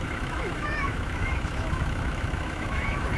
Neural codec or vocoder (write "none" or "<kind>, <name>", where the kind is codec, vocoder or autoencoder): autoencoder, DAC-VAE